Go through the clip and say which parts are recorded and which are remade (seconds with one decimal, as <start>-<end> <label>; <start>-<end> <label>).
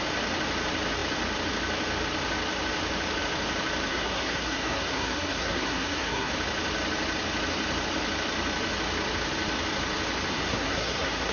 0.0-3.9 recorded; 3.9-6.3 remade; 6.3-10.3 recorded; 10.3-11.3 remade